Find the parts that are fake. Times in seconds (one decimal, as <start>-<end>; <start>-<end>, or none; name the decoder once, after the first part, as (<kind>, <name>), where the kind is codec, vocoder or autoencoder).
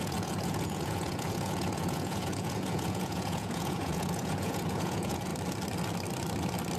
0.0-5.3 (vocoder, Vocos)